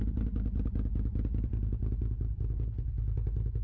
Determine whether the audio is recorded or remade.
recorded